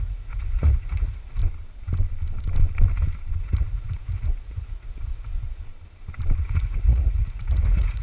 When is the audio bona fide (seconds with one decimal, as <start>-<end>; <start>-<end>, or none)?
1.4-3.4; 5.7-6.4